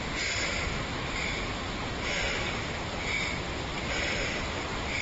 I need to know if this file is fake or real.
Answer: real